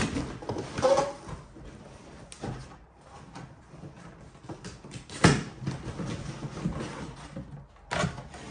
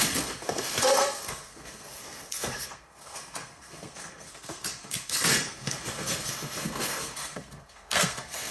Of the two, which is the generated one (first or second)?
second